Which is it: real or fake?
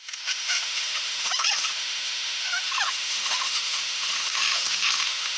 fake